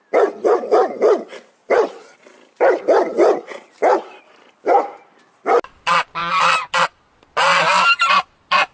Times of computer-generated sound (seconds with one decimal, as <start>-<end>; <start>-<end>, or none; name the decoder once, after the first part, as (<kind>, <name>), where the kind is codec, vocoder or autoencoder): 1.6-2.8 (vocoder, BigVGAN v2); 3.5-4.2